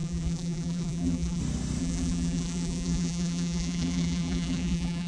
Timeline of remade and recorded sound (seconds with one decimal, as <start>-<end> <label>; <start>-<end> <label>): 0.0-1.4 remade; 1.4-1.8 recorded; 1.8-5.1 remade